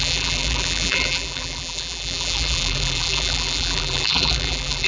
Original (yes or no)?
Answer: no